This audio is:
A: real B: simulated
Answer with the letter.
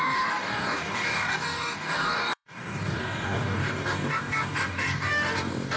B